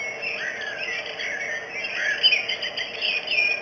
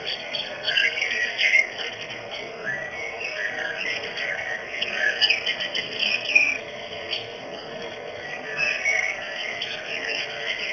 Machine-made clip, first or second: second